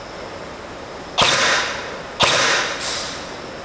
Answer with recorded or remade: recorded